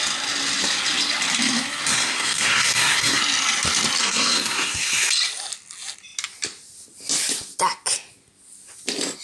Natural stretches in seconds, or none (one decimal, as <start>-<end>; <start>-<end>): 0.0-1.9; 3.2-4.0; 5.1-9.2